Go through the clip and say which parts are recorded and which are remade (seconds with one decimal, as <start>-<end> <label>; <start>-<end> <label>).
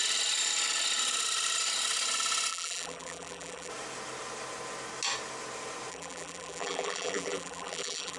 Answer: 0.0-2.5 recorded; 2.5-3.7 remade; 3.7-5.9 recorded; 5.9-8.2 remade